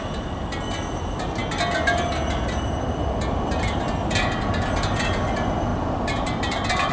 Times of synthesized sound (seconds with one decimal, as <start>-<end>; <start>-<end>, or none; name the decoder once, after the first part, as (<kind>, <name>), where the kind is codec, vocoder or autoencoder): none